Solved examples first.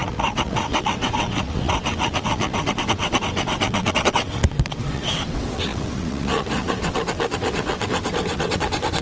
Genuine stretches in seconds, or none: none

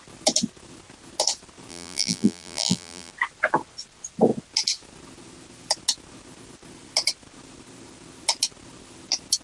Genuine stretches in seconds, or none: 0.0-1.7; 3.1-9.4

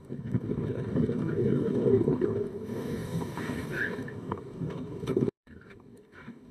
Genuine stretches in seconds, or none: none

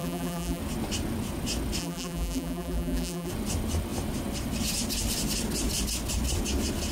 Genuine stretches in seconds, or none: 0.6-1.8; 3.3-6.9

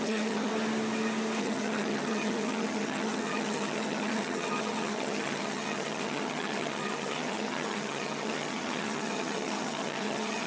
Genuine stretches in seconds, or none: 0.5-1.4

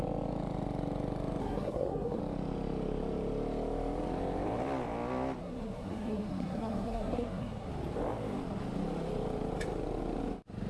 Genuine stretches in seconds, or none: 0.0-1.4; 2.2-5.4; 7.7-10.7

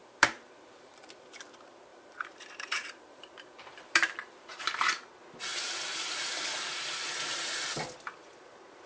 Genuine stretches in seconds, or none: 1.1-1.9; 5.1-8.9

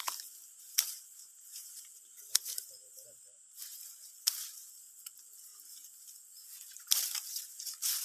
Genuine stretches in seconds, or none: 0.0-1.1; 3.4-8.0